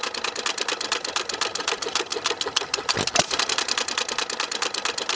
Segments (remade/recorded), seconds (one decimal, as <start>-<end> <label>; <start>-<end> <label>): 0.0-5.2 recorded